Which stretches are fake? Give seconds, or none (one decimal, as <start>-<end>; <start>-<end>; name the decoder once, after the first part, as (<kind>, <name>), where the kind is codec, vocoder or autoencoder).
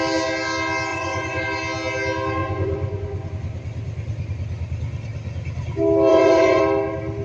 0.9-1.4 (vocoder, Vocos); 2.4-3.3; 6.1-6.6